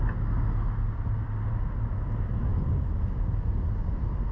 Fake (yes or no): no